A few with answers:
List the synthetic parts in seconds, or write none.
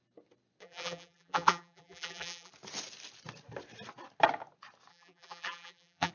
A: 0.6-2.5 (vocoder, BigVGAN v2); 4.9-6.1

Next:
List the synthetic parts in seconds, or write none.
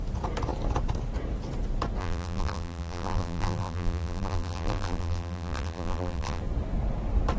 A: 2.0-6.4 (vocoder, BigVGAN v2)